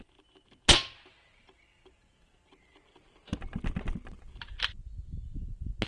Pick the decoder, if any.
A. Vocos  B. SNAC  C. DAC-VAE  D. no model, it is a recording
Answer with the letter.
D